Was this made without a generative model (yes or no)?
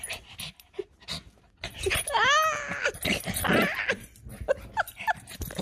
yes